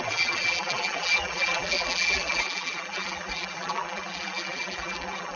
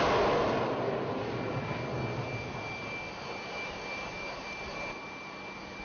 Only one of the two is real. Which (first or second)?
second